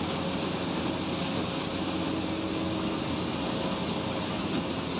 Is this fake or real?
real